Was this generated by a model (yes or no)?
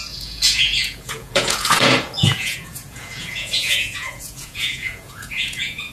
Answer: yes